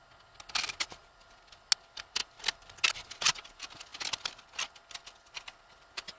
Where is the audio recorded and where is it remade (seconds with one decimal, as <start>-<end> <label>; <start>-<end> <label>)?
0.0-6.2 recorded